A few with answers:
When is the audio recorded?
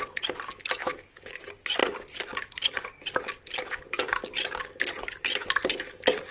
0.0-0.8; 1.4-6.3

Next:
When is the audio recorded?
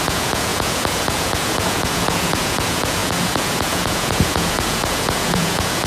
none